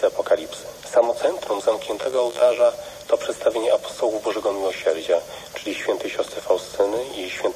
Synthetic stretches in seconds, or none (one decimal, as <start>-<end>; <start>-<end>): 2.0-2.7